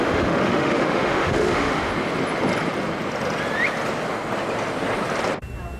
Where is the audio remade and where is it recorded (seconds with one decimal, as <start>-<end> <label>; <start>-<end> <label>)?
0.0-1.9 remade; 1.9-5.8 recorded